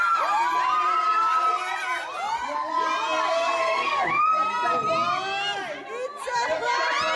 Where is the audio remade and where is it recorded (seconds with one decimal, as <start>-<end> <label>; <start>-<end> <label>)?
0.0-3.6 recorded; 3.6-4.2 remade; 4.2-7.2 recorded